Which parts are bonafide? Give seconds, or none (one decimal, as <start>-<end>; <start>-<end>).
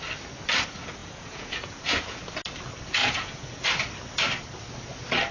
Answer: 0.0-1.0; 2.3-3.0; 3.7-5.3